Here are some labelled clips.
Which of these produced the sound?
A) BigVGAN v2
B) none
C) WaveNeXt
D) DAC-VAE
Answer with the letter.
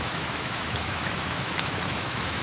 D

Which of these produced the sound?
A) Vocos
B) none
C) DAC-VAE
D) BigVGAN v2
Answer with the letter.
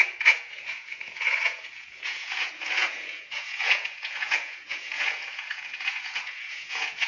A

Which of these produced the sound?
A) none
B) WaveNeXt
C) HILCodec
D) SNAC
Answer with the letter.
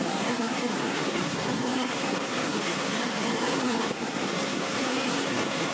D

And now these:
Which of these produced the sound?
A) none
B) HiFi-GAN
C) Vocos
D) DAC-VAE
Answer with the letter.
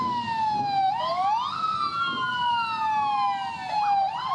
A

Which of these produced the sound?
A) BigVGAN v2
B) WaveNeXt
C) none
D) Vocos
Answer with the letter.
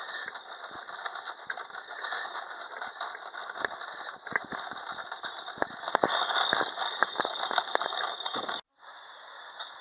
C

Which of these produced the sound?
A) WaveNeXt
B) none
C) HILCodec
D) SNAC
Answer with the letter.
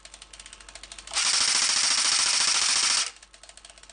B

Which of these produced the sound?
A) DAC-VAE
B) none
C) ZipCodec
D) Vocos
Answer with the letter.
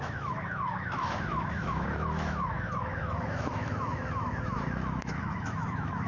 A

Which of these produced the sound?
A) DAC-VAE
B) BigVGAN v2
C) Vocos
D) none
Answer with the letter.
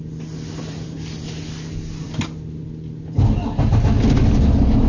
D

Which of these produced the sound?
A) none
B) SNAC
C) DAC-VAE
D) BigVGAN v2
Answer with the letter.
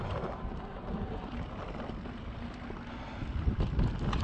D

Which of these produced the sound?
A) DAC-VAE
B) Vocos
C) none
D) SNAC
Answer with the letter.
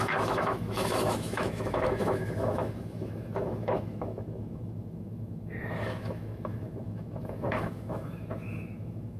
A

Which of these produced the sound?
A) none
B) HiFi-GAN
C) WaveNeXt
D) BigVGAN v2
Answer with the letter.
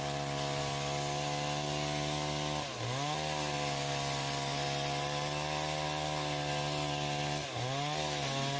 A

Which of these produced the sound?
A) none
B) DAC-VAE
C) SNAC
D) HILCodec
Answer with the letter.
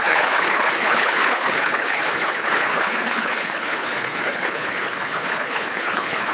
D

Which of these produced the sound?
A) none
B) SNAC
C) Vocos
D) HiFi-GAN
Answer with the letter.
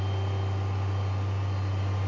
A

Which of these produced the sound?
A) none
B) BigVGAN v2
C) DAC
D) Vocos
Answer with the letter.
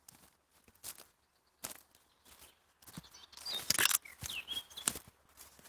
A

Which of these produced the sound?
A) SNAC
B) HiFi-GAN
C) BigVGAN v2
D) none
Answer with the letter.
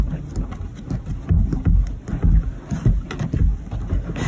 D